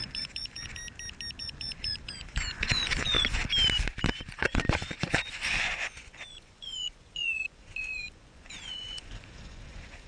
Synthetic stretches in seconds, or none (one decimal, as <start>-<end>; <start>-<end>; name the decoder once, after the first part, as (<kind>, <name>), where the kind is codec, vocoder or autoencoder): 0.0-0.8 (vocoder, Vocos); 1.4-3.4; 4.0-10.1

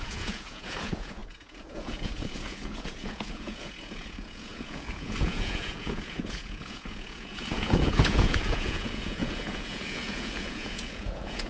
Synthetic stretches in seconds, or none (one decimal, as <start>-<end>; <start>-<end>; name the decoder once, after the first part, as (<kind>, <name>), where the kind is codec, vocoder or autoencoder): 0.0-11.5 (vocoder, Vocos)

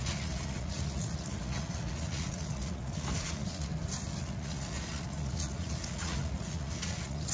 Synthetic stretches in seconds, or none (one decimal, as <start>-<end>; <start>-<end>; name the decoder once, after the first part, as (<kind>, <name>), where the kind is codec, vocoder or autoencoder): 0.0-3.7 (vocoder, Vocos); 4.2-7.3